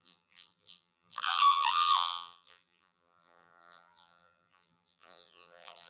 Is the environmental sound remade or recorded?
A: remade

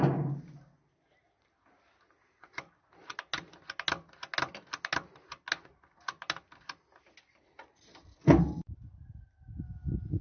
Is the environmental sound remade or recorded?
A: recorded